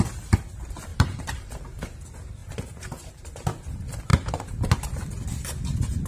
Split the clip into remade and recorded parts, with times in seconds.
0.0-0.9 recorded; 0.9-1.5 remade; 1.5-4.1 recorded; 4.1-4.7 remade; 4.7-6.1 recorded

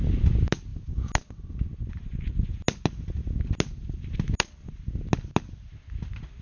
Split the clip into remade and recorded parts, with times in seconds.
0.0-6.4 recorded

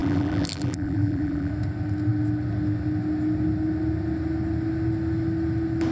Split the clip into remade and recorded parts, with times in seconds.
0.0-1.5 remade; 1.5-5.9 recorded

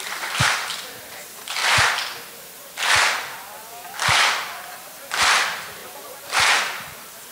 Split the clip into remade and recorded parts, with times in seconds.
0.0-1.6 remade; 1.6-4.6 recorded; 4.6-7.3 remade

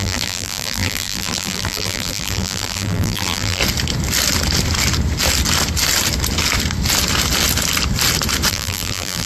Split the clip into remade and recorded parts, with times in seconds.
0.0-3.6 remade; 3.6-8.5 recorded; 8.5-9.3 remade